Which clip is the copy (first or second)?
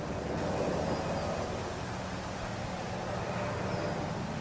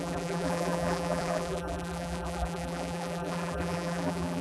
second